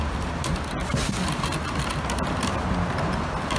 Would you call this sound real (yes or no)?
yes